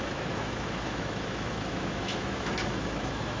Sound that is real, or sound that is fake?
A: fake